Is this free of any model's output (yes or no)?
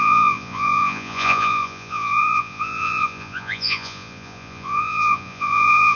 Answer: no